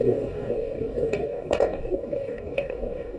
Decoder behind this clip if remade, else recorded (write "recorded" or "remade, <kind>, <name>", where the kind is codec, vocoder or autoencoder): remade, codec, DAC